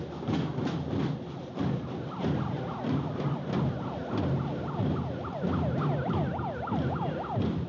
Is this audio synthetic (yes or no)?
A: no